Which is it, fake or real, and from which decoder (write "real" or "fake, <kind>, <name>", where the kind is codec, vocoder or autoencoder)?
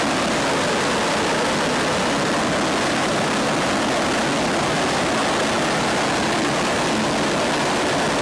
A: real